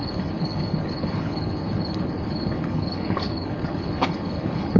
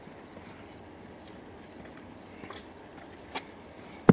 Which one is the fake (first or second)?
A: first